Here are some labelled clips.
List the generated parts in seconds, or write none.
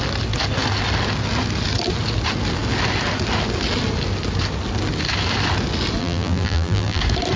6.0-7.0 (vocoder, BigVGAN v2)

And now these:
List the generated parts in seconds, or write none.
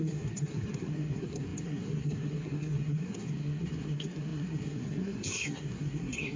0.0-6.4 (codec, SNAC)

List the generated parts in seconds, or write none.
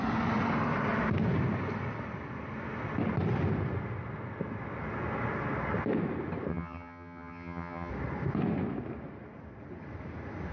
6.5-7.9 (vocoder, HiFi-GAN)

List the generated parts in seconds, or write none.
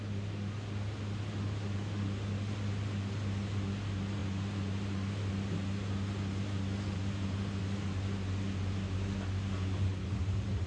none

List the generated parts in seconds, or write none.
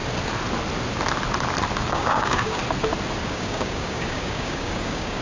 1.9-2.6 (codec, DAC); 3.2-5.2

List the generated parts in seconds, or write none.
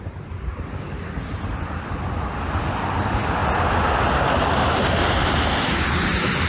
3.4-3.9 (vocoder, BigVGAN v2); 4.5-5.7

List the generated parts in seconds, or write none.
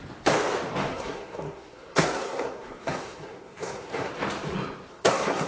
0.9-4.1 (codec, SNAC); 4.9-5.5